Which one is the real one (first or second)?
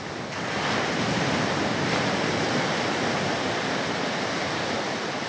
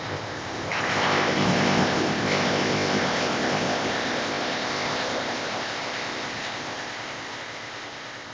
first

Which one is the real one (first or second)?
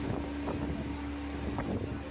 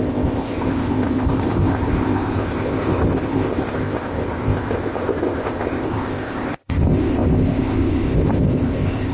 first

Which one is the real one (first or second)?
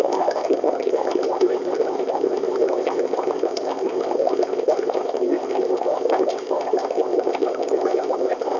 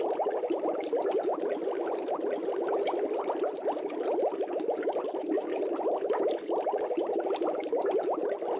second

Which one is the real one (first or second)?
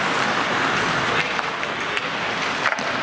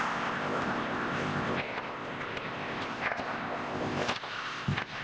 first